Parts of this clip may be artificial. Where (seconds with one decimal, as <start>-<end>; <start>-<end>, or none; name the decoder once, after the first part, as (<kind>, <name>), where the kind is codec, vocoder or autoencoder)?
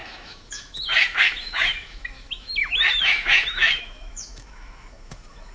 0.0-5.5 (autoencoder, DAC-VAE)